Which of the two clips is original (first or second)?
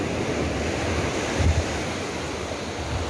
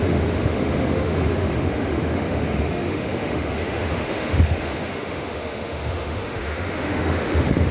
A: first